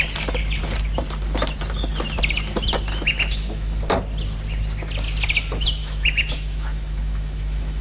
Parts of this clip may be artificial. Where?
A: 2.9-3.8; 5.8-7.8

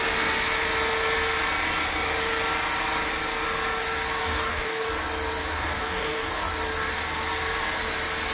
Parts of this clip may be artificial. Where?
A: 4.2-4.9; 5.5-6.5

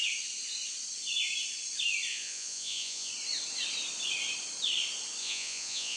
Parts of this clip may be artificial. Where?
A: 2.1-3.1; 5.2-6.0

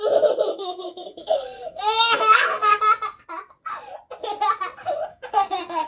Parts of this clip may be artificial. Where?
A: 0.5-2.8; 5.1-5.9

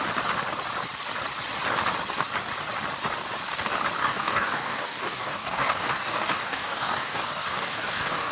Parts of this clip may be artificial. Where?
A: 4.0-8.3

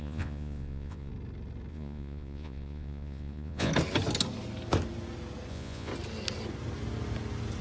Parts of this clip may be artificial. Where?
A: 0.0-1.1; 1.7-3.7; 5.5-5.9